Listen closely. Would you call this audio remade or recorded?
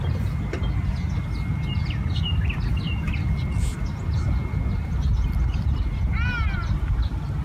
recorded